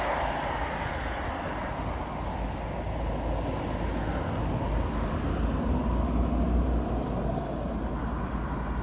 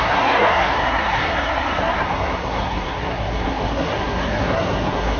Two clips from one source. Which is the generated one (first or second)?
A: second